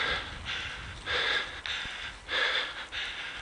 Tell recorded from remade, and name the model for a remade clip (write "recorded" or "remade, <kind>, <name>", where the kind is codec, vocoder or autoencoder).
recorded